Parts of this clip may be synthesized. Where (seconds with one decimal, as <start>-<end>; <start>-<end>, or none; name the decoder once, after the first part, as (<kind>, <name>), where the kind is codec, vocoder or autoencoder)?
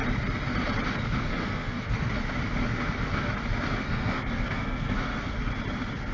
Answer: 1.3-2.1 (codec, SNAC); 3.8-5.5